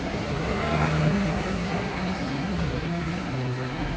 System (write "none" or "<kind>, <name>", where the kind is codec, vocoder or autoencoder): codec, SNAC